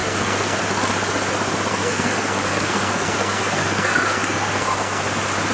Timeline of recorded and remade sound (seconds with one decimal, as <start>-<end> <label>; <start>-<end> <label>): 0.0-0.6 remade; 0.6-1.7 recorded; 1.7-5.0 remade; 5.0-5.5 recorded